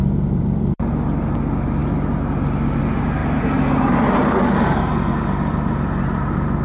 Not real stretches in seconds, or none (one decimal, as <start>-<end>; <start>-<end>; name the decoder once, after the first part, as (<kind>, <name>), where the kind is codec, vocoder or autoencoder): 0.0-0.6 (vocoder, BigVGAN v2)